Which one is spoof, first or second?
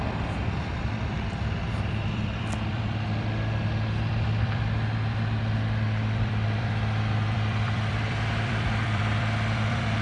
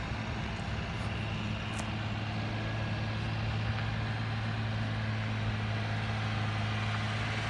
first